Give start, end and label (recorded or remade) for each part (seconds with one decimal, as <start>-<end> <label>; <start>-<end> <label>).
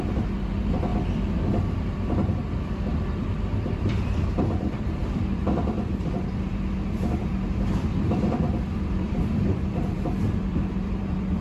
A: 0.0-0.9 remade; 0.9-1.5 recorded; 1.5-11.4 remade